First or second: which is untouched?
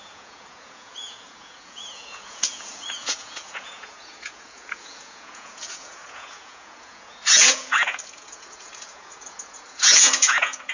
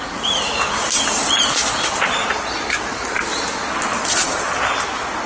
second